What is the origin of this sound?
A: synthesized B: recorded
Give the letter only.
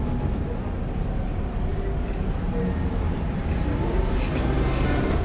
B